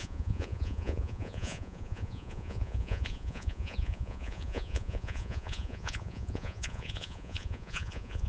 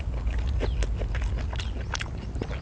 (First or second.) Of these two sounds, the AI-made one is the first